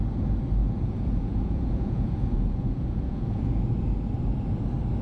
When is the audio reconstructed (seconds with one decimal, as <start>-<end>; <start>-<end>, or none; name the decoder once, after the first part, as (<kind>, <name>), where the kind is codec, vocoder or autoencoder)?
0.6-3.6 (vocoder, Vocos)